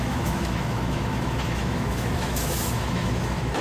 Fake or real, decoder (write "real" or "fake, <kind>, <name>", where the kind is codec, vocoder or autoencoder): fake, autoencoder, DAC-VAE